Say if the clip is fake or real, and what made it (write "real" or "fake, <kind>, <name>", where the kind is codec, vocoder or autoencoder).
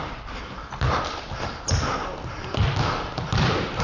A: real